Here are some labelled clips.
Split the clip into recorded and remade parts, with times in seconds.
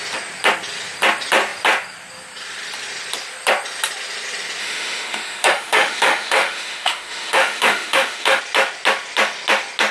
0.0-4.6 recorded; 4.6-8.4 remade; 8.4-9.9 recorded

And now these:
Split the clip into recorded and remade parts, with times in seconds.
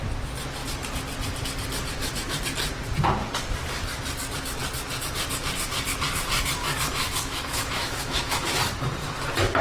0.0-6.6 recorded; 6.6-8.6 remade; 8.6-9.6 recorded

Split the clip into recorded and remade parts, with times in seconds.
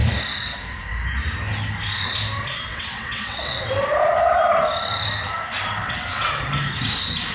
0.0-2.7 recorded; 2.7-3.7 remade; 3.7-5.8 recorded; 5.8-6.5 remade; 6.5-7.3 recorded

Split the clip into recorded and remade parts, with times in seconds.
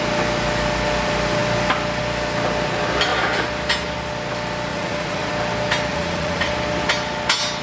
0.0-4.7 recorded; 4.7-5.3 remade; 5.3-5.9 recorded; 5.9-6.5 remade; 6.5-7.6 recorded